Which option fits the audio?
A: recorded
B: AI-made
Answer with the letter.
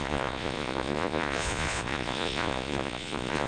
B